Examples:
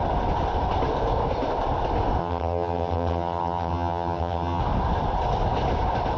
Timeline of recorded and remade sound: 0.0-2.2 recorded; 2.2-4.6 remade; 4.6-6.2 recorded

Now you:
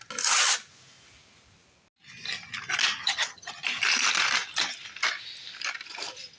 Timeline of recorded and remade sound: 0.0-3.0 recorded; 3.0-3.5 remade; 3.5-6.4 recorded